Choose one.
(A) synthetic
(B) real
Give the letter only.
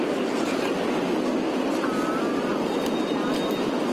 B